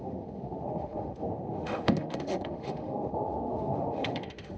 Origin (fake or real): fake